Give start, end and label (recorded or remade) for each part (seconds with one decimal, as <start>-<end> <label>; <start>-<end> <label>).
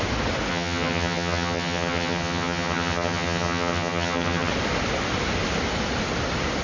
0.0-0.5 recorded; 0.5-4.5 remade; 4.5-6.6 recorded